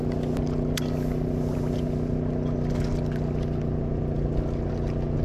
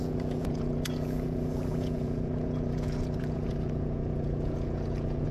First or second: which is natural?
first